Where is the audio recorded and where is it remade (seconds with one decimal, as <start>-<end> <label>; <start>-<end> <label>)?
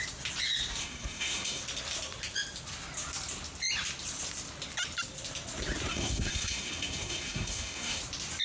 0.0-0.8 recorded; 0.8-1.6 remade; 1.6-5.9 recorded; 5.9-8.0 remade; 8.0-8.4 recorded